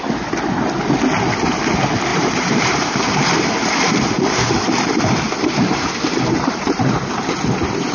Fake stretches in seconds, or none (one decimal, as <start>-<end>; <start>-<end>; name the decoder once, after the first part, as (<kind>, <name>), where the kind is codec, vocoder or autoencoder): 2.1-6.8 (vocoder, BigVGAN v2)